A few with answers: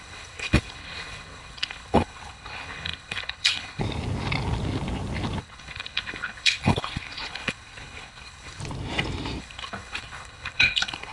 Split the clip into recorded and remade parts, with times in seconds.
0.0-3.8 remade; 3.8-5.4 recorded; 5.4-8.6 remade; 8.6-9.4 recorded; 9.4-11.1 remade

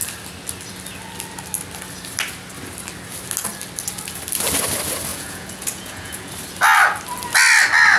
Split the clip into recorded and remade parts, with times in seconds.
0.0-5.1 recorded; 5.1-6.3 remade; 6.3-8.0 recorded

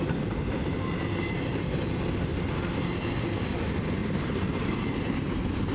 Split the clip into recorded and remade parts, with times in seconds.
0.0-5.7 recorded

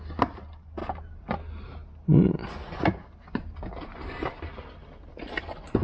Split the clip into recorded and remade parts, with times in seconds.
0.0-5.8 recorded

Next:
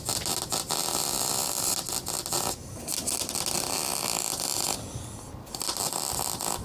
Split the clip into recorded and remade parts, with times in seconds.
0.0-6.6 recorded

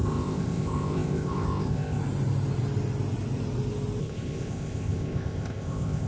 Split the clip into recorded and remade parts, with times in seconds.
0.0-2.0 remade; 2.0-4.0 recorded; 4.0-6.1 remade